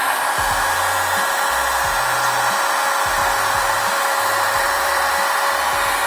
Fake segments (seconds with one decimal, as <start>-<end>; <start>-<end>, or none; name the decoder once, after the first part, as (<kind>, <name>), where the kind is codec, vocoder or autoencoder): 3.2-5.1 (vocoder, BigVGAN v2)